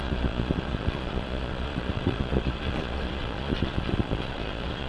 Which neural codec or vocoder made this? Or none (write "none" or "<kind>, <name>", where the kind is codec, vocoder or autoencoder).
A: vocoder, Vocos